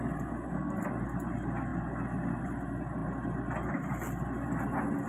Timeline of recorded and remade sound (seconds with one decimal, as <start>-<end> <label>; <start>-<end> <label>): 0.0-5.1 recorded